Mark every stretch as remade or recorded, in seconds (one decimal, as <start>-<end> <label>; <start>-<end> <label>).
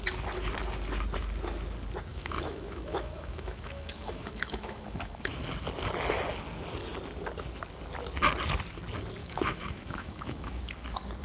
0.0-2.1 recorded; 2.1-5.4 remade; 5.4-9.2 recorded; 9.2-10.6 remade; 10.6-11.2 recorded